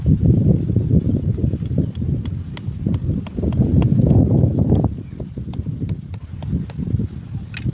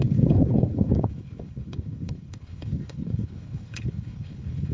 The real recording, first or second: first